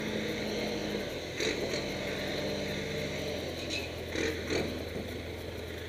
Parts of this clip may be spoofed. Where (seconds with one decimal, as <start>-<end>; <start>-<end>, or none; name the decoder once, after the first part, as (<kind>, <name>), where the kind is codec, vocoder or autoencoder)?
none